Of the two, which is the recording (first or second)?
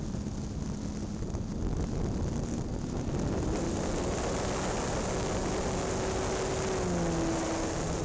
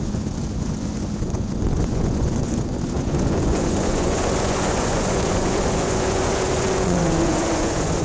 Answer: first